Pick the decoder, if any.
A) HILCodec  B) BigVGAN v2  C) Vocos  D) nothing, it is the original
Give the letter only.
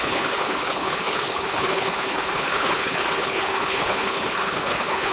A